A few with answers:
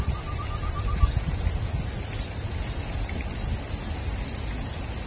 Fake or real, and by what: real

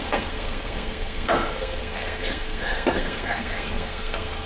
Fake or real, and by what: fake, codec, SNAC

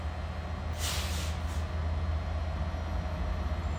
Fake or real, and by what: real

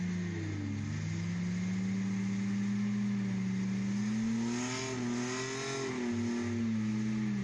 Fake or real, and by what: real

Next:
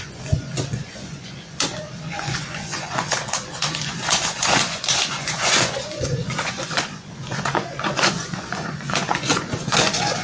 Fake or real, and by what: fake, vocoder, Vocos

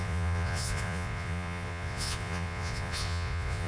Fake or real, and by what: fake, vocoder, Vocos